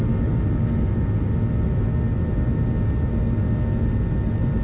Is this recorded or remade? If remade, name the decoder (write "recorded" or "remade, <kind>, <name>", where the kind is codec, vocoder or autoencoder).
recorded